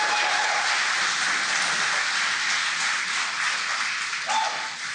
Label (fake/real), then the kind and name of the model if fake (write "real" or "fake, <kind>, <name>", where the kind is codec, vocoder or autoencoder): real